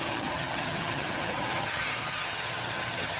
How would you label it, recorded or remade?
remade